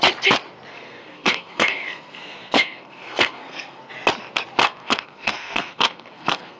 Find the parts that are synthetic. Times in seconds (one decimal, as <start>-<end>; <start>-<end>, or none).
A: 0.7-3.9; 4.6-6.6